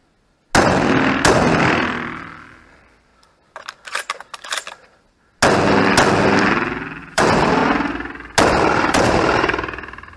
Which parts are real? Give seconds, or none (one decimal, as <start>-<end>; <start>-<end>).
0.0-1.6; 3.1-7.0; 7.6-8.5